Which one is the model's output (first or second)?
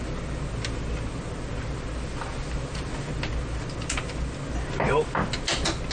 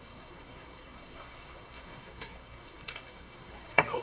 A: second